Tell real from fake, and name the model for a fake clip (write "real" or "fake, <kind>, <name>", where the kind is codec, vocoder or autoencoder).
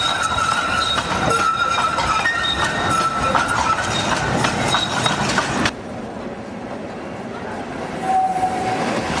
real